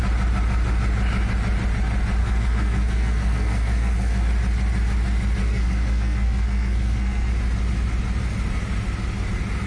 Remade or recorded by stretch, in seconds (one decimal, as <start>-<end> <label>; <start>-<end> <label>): 0.0-2.2 recorded; 2.2-4.3 remade; 4.3-5.4 recorded; 5.4-7.3 remade; 7.3-9.7 recorded